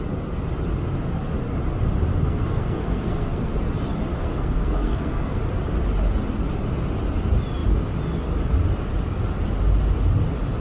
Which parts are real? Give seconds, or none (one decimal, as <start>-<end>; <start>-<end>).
0.0-2.1; 3.5-4.2; 5.4-10.6